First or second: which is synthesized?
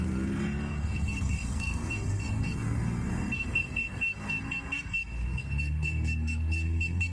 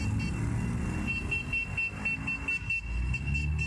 first